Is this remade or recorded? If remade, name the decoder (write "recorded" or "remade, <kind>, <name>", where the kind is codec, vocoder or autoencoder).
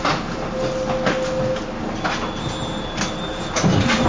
recorded